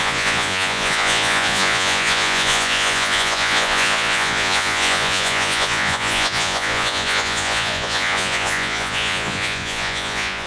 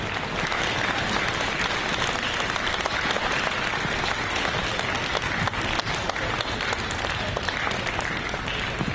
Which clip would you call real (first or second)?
second